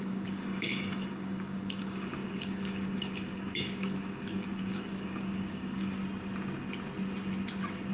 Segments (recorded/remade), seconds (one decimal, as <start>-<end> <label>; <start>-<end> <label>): 0.0-6.0 remade; 6.0-7.9 recorded